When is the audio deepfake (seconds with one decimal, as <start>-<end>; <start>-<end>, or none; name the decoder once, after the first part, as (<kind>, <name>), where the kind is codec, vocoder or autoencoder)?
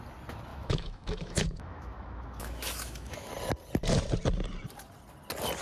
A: 0.5-3.3 (autoencoder, DAC-VAE)